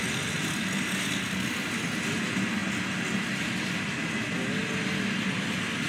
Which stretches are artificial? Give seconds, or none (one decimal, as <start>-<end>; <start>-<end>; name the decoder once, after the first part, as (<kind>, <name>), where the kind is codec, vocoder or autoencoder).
none